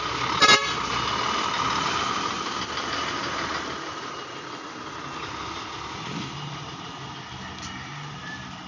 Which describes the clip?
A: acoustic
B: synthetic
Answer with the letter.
A